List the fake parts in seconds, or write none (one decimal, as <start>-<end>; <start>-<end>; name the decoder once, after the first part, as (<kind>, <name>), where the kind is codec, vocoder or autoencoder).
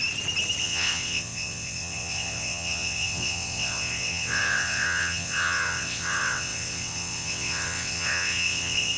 0.6-9.0 (vocoder, WaveNeXt)